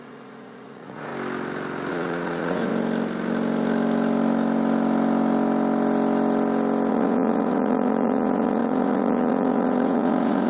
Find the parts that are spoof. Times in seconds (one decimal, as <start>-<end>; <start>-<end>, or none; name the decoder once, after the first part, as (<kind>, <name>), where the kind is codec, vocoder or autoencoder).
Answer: 0.0-1.1 (vocoder, Vocos); 1.9-2.7; 6.9-10.5